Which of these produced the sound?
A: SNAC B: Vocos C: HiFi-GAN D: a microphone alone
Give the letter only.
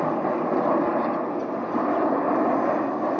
D